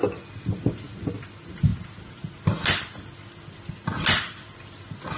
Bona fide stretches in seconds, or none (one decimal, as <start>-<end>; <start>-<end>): 0.0-5.2

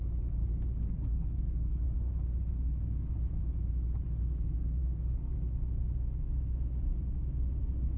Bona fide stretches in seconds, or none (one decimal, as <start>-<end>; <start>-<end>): 0.0-0.4; 2.1-4.8; 5.4-8.0

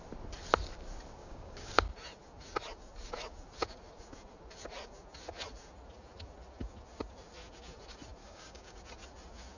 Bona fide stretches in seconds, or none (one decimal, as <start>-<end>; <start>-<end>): 0.0-1.2; 1.8-8.2; 8.8-9.6

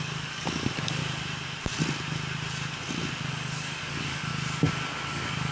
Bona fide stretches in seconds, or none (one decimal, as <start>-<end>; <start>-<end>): 1.0-3.3; 4.3-5.1